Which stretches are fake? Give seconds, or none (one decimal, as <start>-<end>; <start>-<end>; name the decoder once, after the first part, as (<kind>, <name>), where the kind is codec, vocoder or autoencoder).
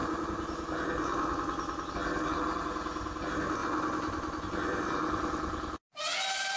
none